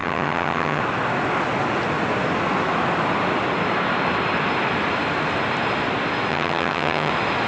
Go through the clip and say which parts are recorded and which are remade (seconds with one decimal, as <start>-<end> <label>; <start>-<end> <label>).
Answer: 0.0-0.8 remade; 0.8-6.3 recorded; 6.3-7.1 remade; 7.1-7.5 recorded